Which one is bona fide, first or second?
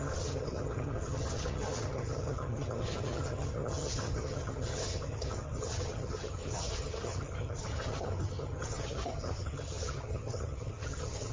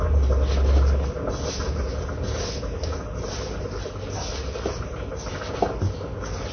second